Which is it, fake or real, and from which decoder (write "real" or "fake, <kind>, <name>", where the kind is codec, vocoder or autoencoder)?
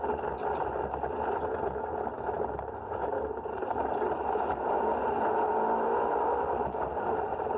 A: real